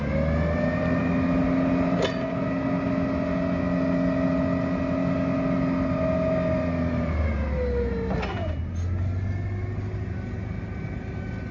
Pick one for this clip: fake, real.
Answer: real